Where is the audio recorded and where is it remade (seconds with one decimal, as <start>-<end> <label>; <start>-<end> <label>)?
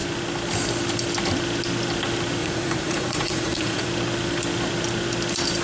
0.0-2.4 recorded; 2.4-3.9 remade; 3.9-5.6 recorded